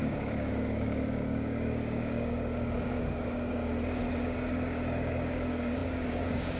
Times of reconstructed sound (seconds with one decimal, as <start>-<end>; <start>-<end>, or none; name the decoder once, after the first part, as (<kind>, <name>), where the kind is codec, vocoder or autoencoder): 0.0-3.6 (codec, DAC); 4.1-6.6